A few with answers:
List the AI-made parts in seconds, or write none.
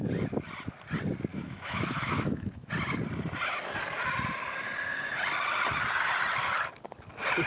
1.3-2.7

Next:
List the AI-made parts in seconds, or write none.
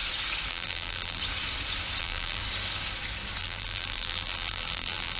0.5-1.2; 2.0-2.4; 3.4-5.2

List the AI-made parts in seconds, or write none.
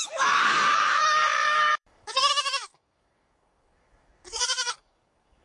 0.0-5.4